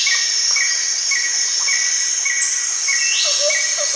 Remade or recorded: recorded